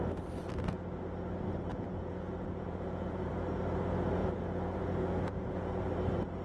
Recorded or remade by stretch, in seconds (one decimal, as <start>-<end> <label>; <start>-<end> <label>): 0.0-1.7 recorded; 1.7-3.3 remade; 3.3-4.2 recorded; 4.2-5.8 remade; 5.8-6.4 recorded